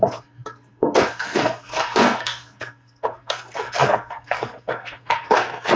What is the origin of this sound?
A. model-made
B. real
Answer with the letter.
A